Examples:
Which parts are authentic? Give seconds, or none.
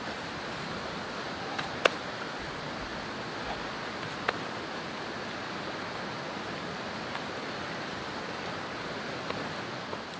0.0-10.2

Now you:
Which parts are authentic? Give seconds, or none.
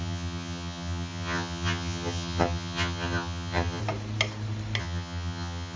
3.8-4.8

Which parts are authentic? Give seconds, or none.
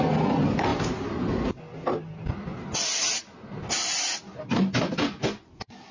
0.0-5.9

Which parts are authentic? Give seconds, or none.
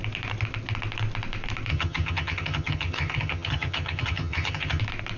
0.0-1.7; 4.8-5.2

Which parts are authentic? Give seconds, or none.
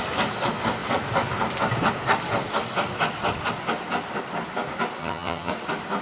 0.0-5.0; 5.5-6.0